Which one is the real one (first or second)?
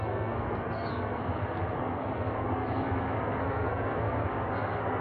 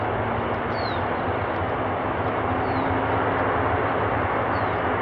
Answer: second